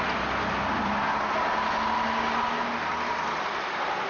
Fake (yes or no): no